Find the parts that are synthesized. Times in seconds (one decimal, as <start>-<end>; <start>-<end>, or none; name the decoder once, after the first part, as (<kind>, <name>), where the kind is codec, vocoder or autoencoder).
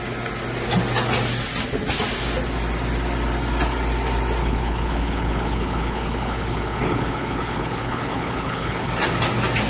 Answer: 4.4-8.9 (codec, HILCodec)